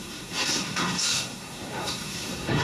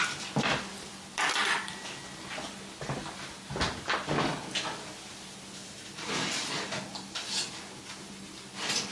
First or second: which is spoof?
first